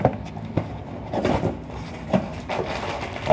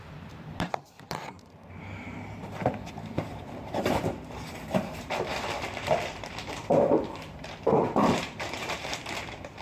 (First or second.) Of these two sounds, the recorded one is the first